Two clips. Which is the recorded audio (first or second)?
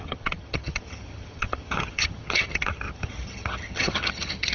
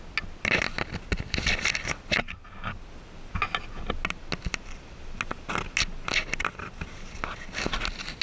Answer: second